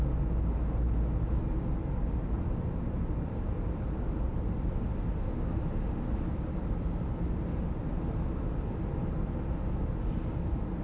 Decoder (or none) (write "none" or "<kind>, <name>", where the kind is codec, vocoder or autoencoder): none